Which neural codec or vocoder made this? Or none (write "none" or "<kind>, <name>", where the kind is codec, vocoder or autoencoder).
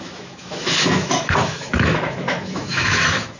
autoencoder, DAC-VAE